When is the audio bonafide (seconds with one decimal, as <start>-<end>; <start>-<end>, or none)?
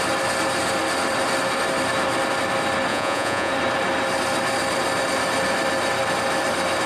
0.0-2.9; 3.5-6.9